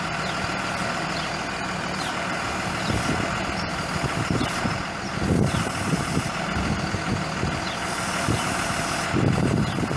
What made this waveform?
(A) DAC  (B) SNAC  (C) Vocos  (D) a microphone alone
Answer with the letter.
D